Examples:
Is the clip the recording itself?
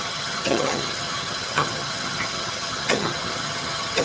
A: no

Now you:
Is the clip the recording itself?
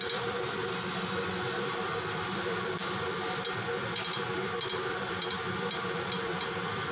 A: no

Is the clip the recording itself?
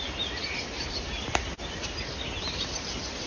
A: yes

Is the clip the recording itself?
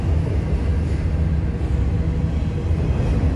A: yes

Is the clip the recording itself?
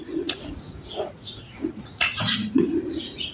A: no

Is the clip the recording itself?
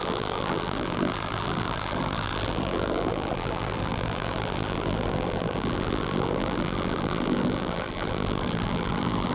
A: no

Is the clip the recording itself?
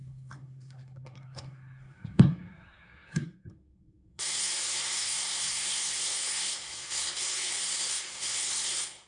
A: no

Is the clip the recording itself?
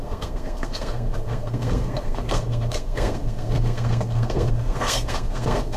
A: no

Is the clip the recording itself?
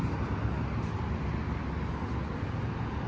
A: yes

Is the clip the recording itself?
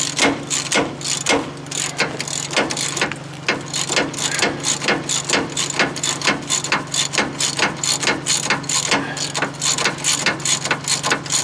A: yes